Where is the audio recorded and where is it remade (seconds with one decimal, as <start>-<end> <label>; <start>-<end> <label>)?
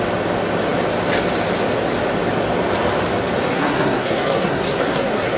0.0-3.5 recorded; 3.5-5.4 remade